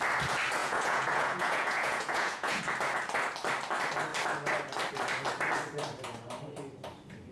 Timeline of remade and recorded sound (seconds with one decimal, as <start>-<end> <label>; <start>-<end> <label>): 0.0-0.6 recorded; 0.6-2.6 remade; 2.6-7.3 recorded